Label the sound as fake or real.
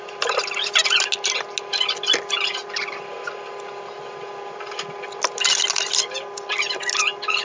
real